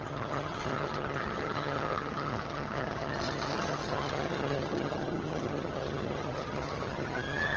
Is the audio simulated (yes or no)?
yes